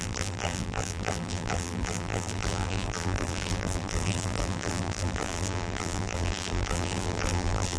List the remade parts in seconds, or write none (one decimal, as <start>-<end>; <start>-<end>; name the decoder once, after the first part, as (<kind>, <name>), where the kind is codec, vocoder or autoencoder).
0.0-7.8 (vocoder, BigVGAN v2)

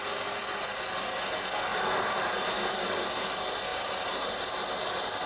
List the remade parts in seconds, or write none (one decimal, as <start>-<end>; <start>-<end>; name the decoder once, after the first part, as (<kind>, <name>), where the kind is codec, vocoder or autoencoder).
1.7-2.8 (vocoder, BigVGAN v2); 3.7-4.7